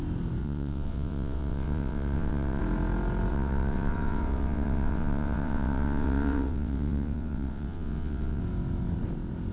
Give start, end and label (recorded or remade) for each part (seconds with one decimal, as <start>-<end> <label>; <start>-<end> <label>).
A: 0.0-0.4 recorded; 0.4-2.6 remade; 2.6-3.3 recorded; 3.3-8.4 remade; 8.4-9.5 recorded